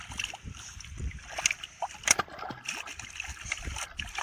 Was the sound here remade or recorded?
recorded